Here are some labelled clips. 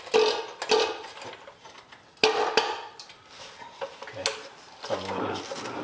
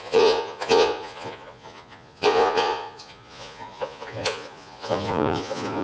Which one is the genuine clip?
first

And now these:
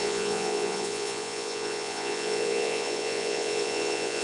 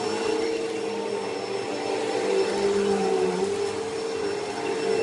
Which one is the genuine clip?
second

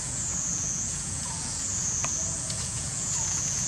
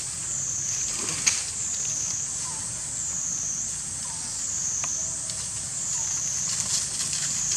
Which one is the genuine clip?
second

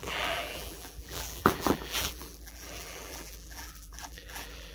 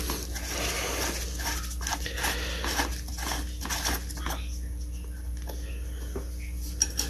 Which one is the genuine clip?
second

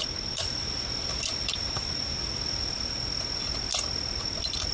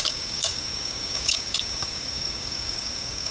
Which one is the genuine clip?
first